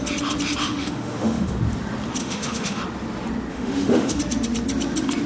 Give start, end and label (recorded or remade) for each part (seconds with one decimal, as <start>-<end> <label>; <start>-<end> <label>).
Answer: 0.0-0.6 recorded; 0.6-1.6 remade; 1.6-2.2 recorded; 2.2-2.8 remade; 2.8-3.5 recorded; 3.5-4.2 remade; 4.2-5.3 recorded